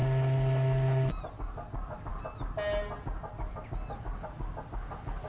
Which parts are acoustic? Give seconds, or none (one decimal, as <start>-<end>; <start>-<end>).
0.0-5.3